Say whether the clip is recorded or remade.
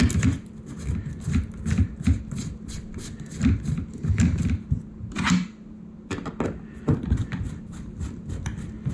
recorded